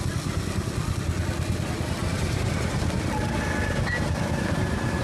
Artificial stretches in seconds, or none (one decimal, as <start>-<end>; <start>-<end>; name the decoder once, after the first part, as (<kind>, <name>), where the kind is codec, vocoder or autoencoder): none